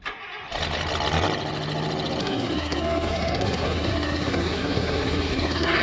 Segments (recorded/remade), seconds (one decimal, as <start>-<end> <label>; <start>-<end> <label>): 0.0-2.2 recorded; 2.2-5.8 remade